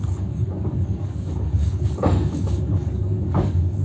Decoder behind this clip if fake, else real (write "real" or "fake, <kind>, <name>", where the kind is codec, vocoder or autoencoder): fake, codec, DAC